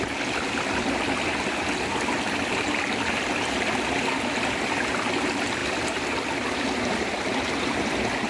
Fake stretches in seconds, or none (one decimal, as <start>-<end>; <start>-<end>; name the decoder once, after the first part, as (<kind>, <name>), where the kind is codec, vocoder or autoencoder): none